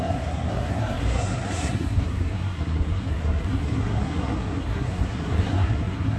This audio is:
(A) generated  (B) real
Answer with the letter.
A